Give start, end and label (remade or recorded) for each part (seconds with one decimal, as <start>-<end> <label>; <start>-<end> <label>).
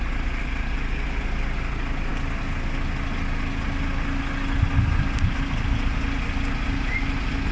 0.0-7.5 recorded